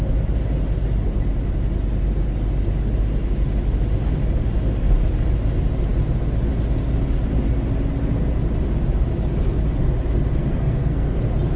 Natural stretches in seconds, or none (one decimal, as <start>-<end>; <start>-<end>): 0.0-10.4; 11.2-11.6